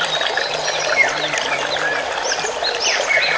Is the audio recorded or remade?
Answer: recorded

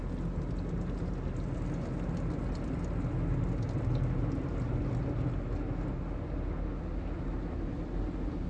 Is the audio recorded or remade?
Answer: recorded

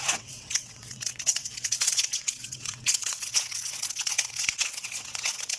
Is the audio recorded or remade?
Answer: remade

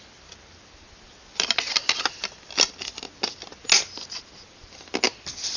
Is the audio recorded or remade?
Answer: recorded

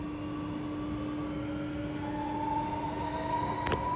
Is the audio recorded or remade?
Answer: recorded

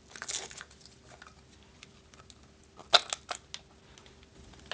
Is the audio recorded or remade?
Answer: recorded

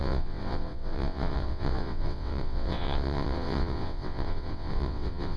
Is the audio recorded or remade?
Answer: remade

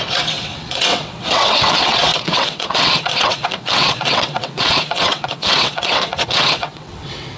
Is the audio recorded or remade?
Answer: remade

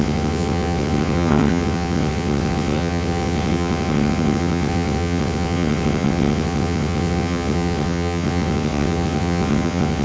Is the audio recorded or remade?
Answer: remade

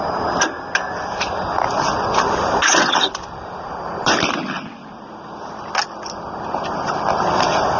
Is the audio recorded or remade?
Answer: recorded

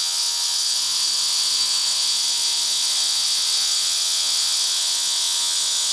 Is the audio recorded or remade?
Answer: remade